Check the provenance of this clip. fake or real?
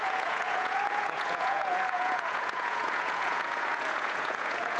fake